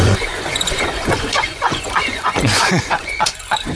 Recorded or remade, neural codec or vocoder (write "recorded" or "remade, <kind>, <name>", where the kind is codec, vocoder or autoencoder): remade, vocoder, Vocos